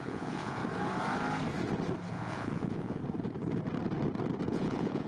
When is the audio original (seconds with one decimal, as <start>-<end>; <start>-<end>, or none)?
0.6-2.1; 3.0-4.5